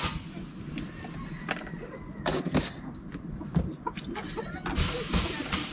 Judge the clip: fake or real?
real